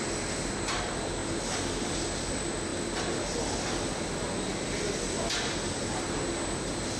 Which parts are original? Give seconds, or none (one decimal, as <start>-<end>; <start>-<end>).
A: 0.0-7.0